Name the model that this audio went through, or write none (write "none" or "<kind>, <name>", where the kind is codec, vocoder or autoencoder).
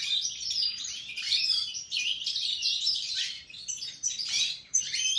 vocoder, BigVGAN v2